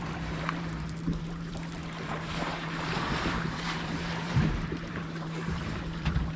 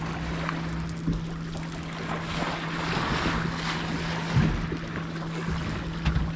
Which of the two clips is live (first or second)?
second